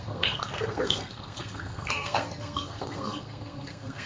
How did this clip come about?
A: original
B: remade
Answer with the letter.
B